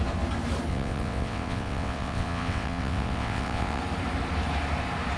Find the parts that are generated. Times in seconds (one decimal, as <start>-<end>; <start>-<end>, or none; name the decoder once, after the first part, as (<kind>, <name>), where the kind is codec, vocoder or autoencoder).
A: 0.7-3.8 (vocoder, WaveNeXt)